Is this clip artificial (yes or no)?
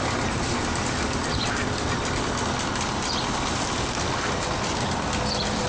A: no